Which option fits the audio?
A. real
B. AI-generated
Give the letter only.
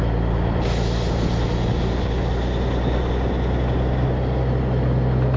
A